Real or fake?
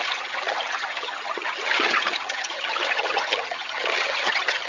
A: fake